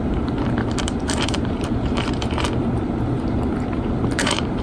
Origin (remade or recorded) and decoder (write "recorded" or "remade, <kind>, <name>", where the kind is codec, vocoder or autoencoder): remade, vocoder, BigVGAN v2